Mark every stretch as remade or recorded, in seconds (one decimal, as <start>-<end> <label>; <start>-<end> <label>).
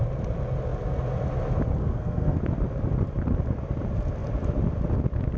0.0-1.8 recorded; 1.8-2.4 remade; 2.4-5.4 recorded